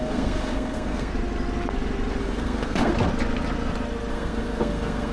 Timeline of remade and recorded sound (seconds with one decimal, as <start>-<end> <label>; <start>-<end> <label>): 0.0-1.1 remade; 1.1-2.2 recorded; 2.2-2.9 remade; 2.9-4.1 recorded; 4.1-5.1 remade